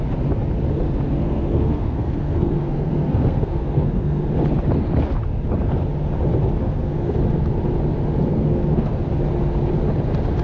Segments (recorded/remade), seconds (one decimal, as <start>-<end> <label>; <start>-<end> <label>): 0.0-1.2 recorded; 1.2-4.2 remade; 4.2-6.6 recorded; 6.6-7.1 remade; 7.1-8.3 recorded; 8.3-8.9 remade; 8.9-10.4 recorded